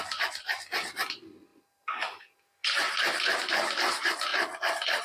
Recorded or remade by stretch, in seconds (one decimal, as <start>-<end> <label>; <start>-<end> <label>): 0.0-5.0 recorded